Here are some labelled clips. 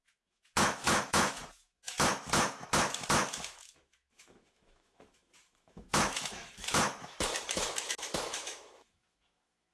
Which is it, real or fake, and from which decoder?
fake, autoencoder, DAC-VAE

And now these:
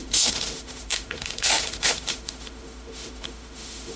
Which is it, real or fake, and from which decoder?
fake, autoencoder, DAC-VAE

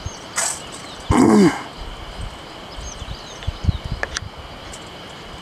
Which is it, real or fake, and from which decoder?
real